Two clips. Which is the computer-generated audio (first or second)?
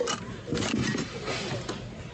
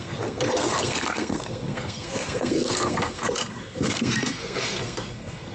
second